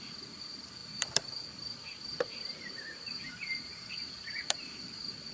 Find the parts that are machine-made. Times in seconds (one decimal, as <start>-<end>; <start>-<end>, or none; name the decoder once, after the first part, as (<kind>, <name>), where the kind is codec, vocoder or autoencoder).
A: 0.0-5.3 (vocoder, BigVGAN v2)